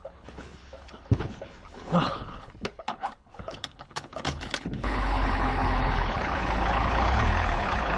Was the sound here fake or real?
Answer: fake